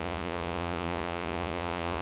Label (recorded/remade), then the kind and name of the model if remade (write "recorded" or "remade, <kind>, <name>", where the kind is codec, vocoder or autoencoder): remade, vocoder, Vocos